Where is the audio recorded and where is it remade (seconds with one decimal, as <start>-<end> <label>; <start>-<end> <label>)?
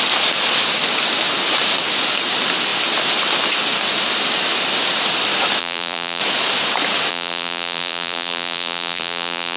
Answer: 0.0-5.6 recorded; 5.6-6.2 remade; 6.2-7.1 recorded; 7.1-9.6 remade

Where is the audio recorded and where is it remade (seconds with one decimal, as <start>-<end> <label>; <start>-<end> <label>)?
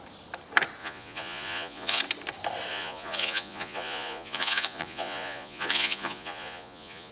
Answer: 0.0-0.8 recorded; 0.8-2.0 remade; 2.0-2.7 recorded; 2.7-7.1 remade